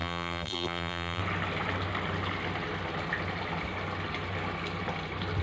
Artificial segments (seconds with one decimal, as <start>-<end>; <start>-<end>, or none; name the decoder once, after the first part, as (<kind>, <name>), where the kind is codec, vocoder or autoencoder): 0.0-1.2 (vocoder, BigVGAN v2)